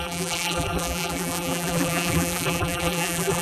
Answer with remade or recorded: remade